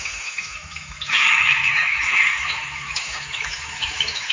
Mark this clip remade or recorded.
remade